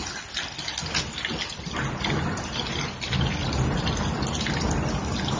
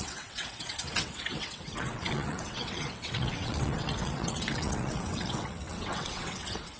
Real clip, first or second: first